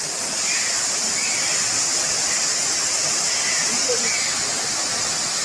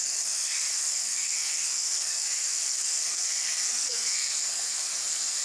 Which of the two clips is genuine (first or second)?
first